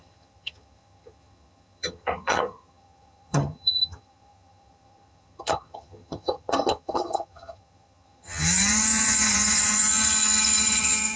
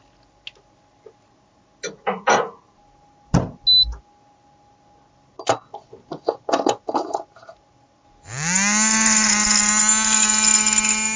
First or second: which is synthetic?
first